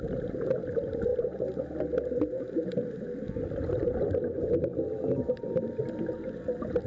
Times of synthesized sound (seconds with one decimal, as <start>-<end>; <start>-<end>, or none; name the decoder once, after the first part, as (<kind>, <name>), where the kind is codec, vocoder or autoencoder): none